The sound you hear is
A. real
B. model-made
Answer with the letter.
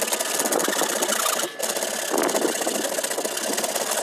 A